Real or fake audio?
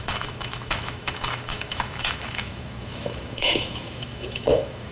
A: fake